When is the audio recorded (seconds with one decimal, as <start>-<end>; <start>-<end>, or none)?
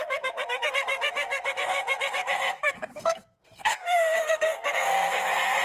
none